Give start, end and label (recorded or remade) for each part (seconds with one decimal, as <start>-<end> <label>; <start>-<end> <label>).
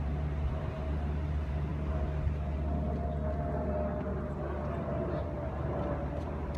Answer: 0.0-1.7 remade; 1.7-4.8 recorded; 4.8-6.6 remade